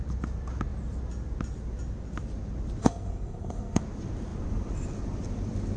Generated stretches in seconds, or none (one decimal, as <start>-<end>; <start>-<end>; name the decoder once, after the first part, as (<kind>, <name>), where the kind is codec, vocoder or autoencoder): 2.8-3.8 (codec, SNAC)